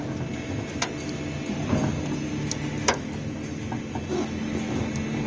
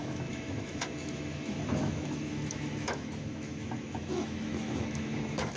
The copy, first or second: second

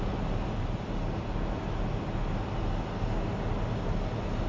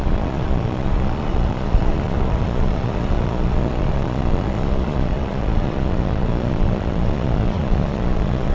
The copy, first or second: second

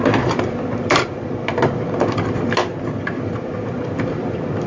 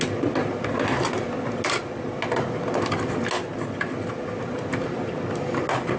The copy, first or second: first